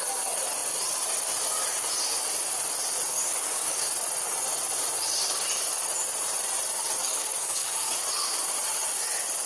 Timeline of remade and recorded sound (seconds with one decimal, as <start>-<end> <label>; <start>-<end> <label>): 0.0-3.1 recorded; 3.1-3.9 remade; 3.9-7.0 recorded; 7.0-8.0 remade; 8.0-9.5 recorded